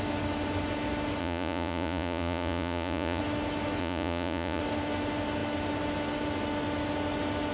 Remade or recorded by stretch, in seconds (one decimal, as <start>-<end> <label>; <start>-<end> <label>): 0.0-1.2 recorded; 1.2-3.2 remade; 3.2-3.8 recorded; 3.8-4.6 remade; 4.6-7.5 recorded